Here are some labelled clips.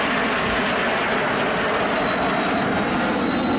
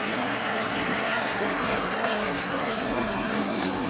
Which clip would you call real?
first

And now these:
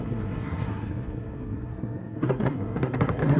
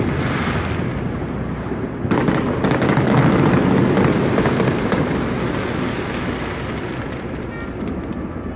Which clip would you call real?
second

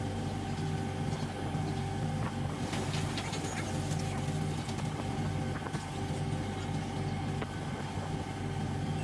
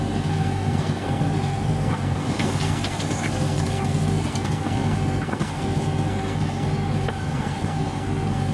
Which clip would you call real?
first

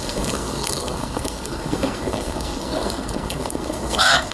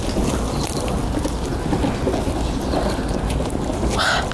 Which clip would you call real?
second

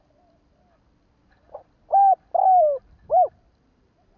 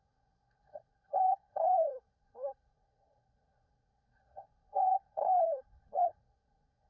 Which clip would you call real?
first